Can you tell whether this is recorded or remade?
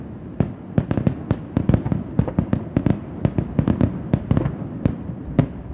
recorded